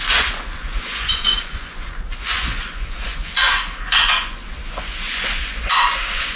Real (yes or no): no